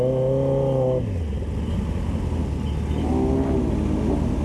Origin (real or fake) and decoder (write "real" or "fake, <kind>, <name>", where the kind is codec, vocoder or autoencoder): real